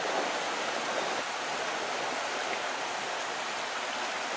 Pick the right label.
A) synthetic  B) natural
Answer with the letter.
B